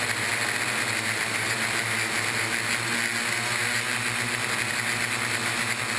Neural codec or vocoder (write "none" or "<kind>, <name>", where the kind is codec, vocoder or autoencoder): none